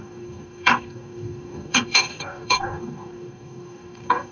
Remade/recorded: remade